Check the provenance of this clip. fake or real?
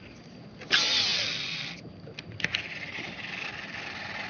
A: real